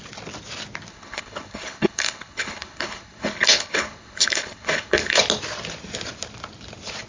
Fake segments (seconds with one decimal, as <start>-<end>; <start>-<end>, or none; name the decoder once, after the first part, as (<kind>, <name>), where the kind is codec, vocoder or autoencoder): 0.9-5.2 (codec, HILCodec)